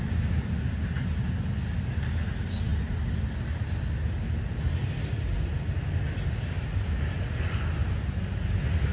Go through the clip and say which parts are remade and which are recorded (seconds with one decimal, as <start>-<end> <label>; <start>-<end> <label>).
0.0-8.9 recorded